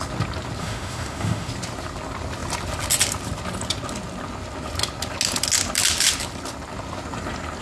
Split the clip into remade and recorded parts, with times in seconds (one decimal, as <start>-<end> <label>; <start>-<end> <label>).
0.0-0.6 recorded; 0.6-1.5 remade; 1.5-7.6 recorded